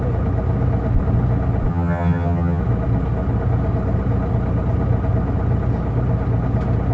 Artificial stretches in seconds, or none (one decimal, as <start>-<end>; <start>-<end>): 1.7-2.6